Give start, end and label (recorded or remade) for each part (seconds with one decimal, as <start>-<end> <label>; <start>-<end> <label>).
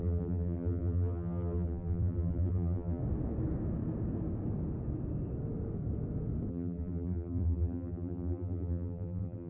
0.0-3.0 remade; 3.0-6.5 recorded; 6.5-9.5 remade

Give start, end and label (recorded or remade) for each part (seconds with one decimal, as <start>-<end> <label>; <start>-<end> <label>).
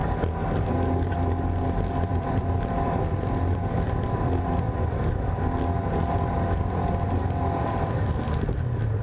0.0-2.1 recorded; 2.1-4.9 remade; 4.9-9.0 recorded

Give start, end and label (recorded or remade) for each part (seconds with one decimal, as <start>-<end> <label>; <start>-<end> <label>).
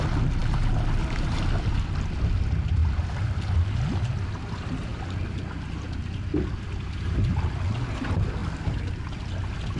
0.0-9.8 recorded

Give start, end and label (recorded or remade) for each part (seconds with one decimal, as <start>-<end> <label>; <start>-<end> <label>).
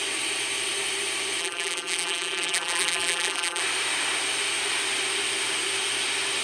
0.0-1.4 recorded; 1.4-3.6 remade; 3.6-6.4 recorded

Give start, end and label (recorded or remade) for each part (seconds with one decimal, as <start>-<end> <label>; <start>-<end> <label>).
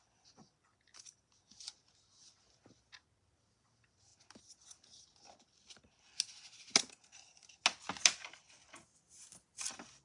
0.0-10.0 recorded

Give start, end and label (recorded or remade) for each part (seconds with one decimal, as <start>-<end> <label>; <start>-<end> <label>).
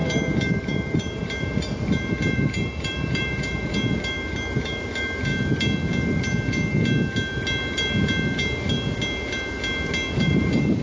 0.0-5.3 remade; 5.3-10.1 recorded; 10.1-10.8 remade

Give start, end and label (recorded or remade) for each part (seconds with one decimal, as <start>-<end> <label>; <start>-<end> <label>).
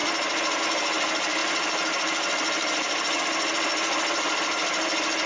0.0-5.3 recorded